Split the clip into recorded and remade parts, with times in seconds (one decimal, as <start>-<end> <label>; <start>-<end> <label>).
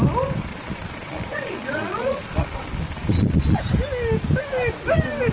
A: 0.0-0.5 recorded; 0.5-3.6 remade; 3.6-5.3 recorded